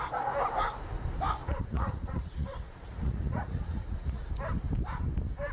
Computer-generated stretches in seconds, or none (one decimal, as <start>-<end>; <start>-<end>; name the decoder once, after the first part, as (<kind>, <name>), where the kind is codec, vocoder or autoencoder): 1.4-4.2 (vocoder, Vocos)